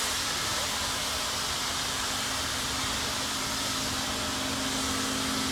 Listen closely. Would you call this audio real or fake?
real